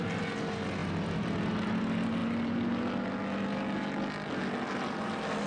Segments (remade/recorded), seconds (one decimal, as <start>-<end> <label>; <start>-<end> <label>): 0.0-5.5 recorded